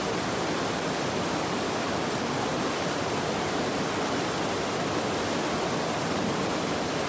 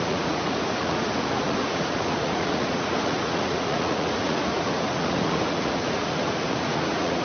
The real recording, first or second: first